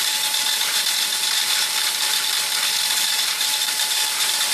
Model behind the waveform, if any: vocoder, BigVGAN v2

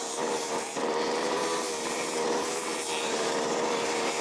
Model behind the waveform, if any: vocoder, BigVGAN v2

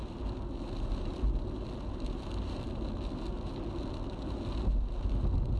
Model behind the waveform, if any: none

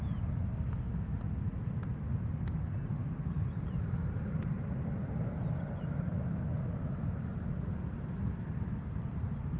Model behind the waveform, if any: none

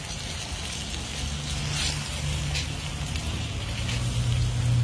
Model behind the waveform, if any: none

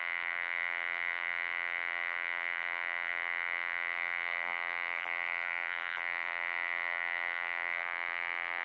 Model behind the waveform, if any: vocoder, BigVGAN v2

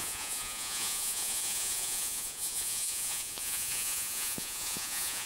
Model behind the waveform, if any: vocoder, Vocos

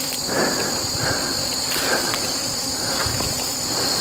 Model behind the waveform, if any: none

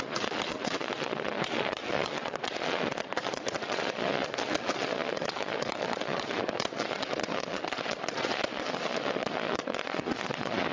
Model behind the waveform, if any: vocoder, Vocos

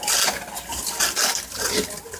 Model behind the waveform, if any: none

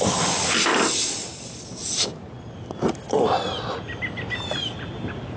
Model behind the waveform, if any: none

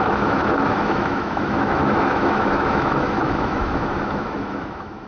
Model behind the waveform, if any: autoencoder, DAC-VAE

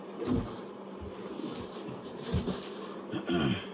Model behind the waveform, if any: vocoder, BigVGAN v2